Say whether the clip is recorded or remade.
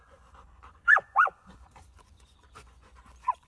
remade